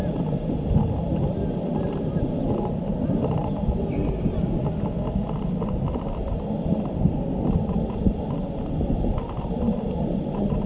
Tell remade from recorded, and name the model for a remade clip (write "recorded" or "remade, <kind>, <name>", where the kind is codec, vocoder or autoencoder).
recorded